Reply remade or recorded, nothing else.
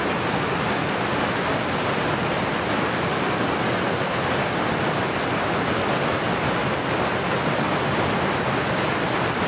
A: recorded